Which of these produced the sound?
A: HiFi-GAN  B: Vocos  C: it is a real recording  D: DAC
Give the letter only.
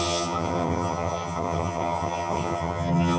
A